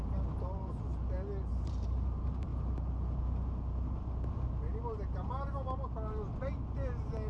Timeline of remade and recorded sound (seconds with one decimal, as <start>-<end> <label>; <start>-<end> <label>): 0.0-0.9 remade; 0.9-1.5 recorded; 1.5-2.5 remade; 2.5-7.3 recorded